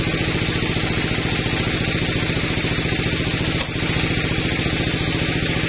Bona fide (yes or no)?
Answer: yes